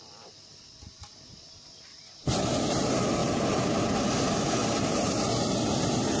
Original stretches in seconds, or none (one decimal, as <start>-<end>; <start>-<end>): 0.0-6.2

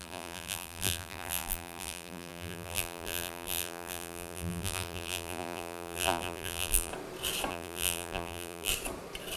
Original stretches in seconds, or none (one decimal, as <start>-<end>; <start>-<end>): 6.9-7.5; 8.7-9.4

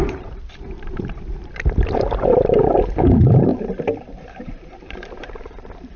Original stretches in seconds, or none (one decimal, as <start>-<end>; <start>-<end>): 3.5-4.2

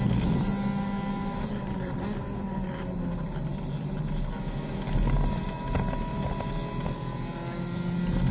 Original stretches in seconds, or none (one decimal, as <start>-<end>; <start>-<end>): 0.0-8.3

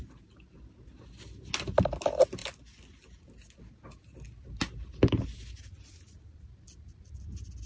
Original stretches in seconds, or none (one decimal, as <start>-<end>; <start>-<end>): 0.0-7.7

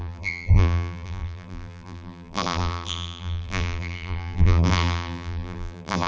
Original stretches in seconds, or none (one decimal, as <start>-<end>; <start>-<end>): none

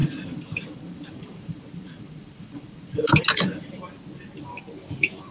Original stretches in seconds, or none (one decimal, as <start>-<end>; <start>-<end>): 3.2-5.3

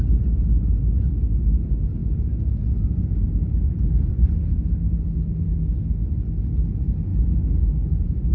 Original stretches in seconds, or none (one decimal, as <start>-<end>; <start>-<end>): 0.0-7.1; 7.6-8.3